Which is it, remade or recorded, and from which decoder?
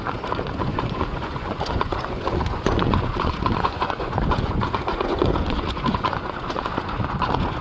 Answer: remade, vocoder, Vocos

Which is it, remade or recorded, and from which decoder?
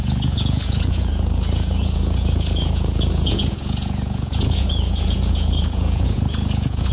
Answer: remade, vocoder, Vocos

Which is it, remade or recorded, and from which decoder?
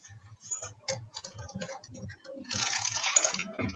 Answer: remade, vocoder, Vocos